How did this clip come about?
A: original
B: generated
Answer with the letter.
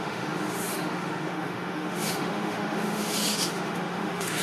B